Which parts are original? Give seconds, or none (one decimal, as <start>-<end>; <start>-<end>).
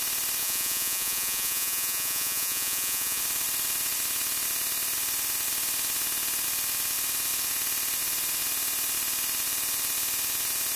0.0-0.4; 3.2-10.8